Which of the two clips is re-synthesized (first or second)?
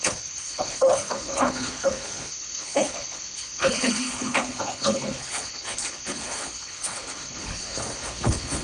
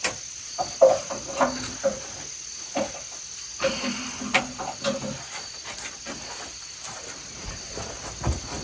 first